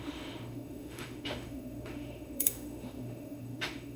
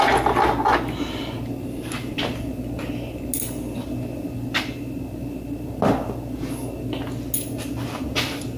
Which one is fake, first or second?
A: first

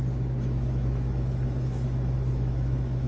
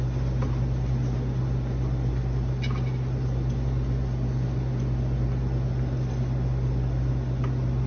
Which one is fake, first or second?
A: first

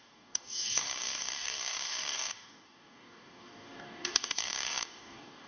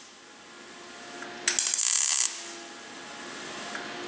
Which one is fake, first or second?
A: first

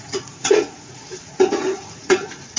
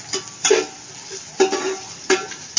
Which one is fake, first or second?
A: first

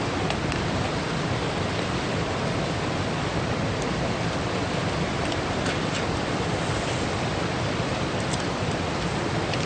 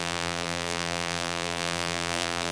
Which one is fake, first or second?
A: second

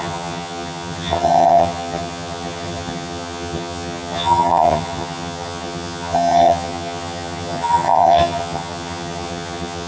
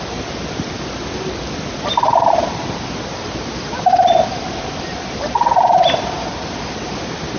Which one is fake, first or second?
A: first